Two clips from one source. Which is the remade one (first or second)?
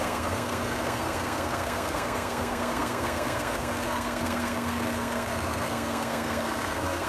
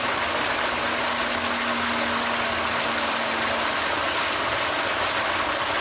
first